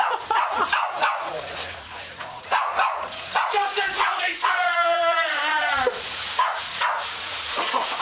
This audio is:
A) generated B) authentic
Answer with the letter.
A